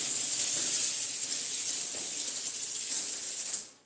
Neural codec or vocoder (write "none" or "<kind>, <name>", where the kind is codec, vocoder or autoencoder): none